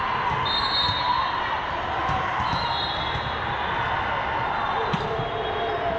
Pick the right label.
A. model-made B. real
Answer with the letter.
B